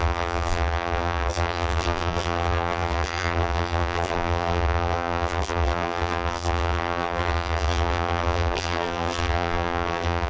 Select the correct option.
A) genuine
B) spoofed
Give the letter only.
B